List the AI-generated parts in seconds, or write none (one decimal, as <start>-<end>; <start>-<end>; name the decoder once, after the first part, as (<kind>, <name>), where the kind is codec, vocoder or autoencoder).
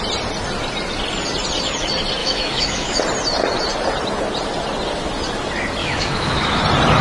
2.2-3.0 (autoencoder, DAC-VAE); 5.8-6.6